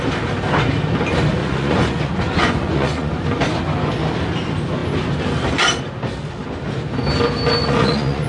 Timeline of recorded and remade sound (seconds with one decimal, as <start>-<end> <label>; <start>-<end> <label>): 0.0-1.4 recorded; 1.4-3.1 remade; 3.1-7.6 recorded; 7.6-8.3 remade